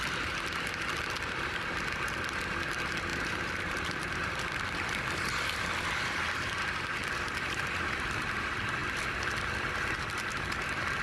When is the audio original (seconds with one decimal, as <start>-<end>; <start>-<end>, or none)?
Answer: 0.0-3.1; 4.3-7.0; 8.3-11.0